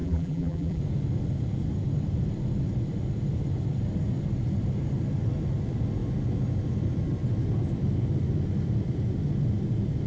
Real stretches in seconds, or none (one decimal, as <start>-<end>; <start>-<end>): 0.8-10.1